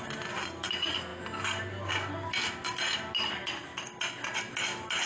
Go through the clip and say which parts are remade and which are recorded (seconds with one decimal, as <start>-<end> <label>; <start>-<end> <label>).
0.0-5.1 recorded

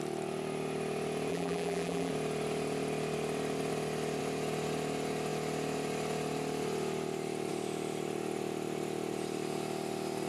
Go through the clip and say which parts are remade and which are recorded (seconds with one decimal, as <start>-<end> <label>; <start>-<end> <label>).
0.0-1.3 recorded; 1.3-2.1 remade; 2.1-10.3 recorded

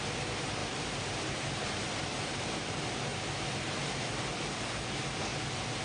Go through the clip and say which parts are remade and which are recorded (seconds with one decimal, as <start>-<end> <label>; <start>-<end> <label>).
0.0-0.6 recorded; 0.6-2.6 remade; 2.6-5.8 recorded

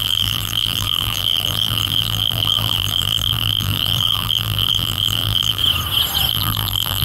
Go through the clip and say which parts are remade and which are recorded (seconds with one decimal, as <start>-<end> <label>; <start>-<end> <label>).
0.0-5.6 remade; 5.6-6.3 recorded; 6.3-7.0 remade

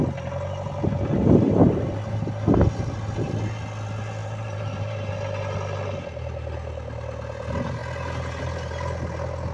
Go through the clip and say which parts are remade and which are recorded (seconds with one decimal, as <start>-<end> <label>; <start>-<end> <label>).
0.0-1.2 recorded; 1.2-1.8 remade; 1.8-4.2 recorded; 4.2-5.1 remade; 5.1-9.5 recorded

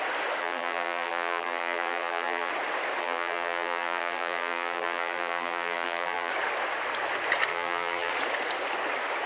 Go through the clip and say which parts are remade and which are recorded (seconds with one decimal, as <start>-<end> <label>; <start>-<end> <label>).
0.0-0.4 recorded; 0.4-2.5 remade; 2.5-3.0 recorded; 3.0-6.3 remade; 6.3-7.5 recorded; 7.5-8.1 remade; 8.1-9.3 recorded

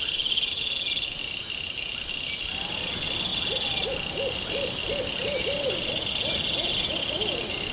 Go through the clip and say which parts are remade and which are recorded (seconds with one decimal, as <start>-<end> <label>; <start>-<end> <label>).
0.0-7.7 recorded

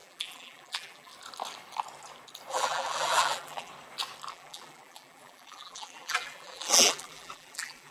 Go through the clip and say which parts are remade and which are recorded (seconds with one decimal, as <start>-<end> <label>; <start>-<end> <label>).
0.0-1.1 remade; 1.1-2.5 recorded; 2.5-3.7 remade; 3.7-4.3 recorded; 4.3-7.9 remade